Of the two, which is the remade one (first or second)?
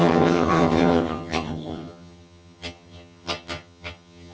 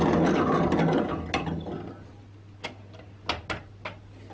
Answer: first